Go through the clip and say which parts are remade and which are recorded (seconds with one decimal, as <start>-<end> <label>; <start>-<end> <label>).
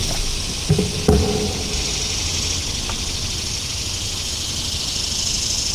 0.0-5.7 recorded